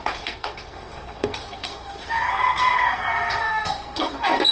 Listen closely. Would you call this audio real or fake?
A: fake